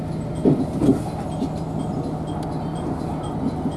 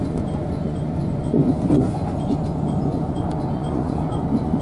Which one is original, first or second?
first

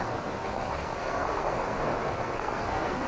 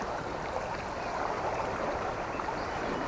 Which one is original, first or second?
second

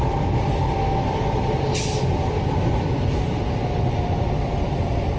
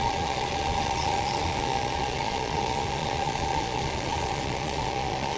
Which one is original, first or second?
first